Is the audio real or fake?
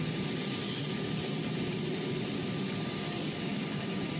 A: real